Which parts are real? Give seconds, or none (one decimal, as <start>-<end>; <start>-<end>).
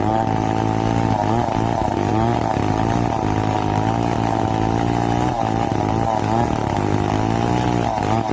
0.0-8.3